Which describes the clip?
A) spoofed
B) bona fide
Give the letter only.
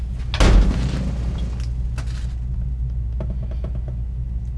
B